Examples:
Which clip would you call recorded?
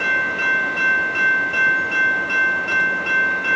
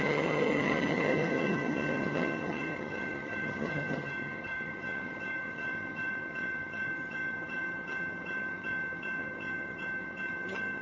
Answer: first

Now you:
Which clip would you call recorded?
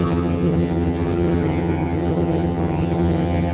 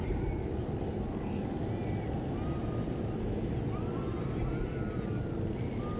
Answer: second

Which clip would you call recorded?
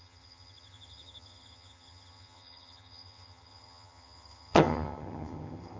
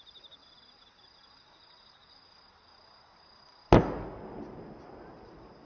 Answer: second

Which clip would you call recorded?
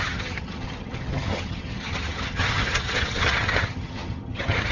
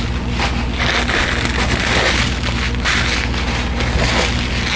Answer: second